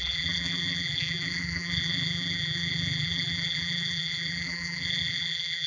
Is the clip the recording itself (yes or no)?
no